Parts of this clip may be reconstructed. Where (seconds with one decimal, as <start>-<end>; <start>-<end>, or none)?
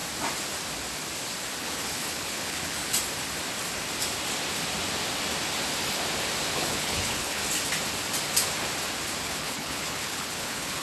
1.6-2.8; 6.5-7.4; 9.2-10.8